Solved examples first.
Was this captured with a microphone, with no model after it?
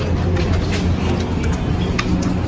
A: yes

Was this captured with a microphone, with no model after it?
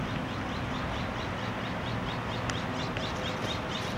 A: yes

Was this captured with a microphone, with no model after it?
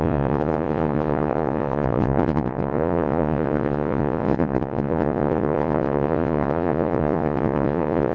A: no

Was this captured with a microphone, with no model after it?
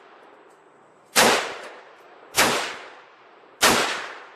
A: no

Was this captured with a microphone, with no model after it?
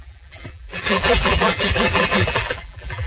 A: no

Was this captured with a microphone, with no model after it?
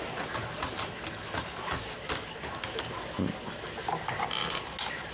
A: yes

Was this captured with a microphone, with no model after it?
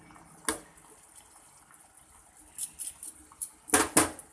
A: yes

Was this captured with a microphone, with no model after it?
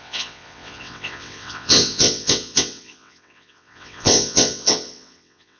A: no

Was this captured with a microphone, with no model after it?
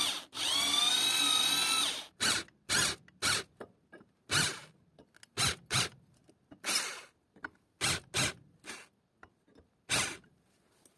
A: yes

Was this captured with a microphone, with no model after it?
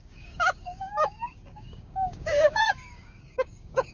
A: no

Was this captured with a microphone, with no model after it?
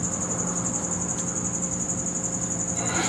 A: yes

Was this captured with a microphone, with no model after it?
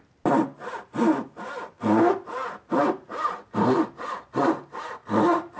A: yes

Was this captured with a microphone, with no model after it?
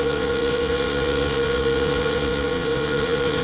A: no